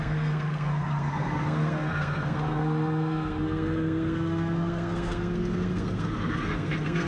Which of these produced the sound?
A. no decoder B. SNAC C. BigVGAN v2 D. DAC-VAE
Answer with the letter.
B